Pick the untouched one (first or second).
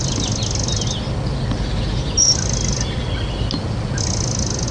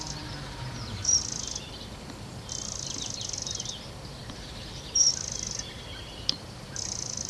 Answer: first